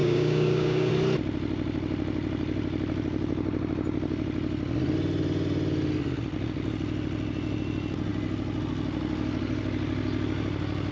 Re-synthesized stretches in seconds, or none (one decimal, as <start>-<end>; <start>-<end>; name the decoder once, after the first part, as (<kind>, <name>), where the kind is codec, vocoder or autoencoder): 0.0-0.9 (codec, DAC)